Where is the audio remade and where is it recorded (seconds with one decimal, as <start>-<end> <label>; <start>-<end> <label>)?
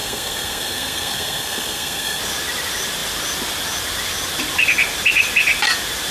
0.0-2.2 remade; 2.2-6.1 recorded